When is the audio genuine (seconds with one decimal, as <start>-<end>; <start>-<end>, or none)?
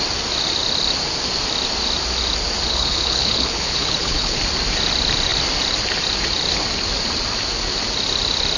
0.0-2.7; 4.4-8.6